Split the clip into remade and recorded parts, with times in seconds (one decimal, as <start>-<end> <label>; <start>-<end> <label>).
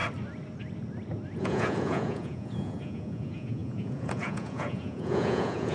0.0-1.4 recorded; 1.4-5.7 remade